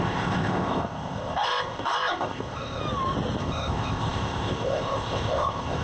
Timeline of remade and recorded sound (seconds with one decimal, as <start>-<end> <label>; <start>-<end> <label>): 0.0-2.8 remade; 2.8-3.4 recorded; 3.4-5.8 remade